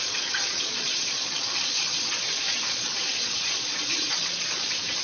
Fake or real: fake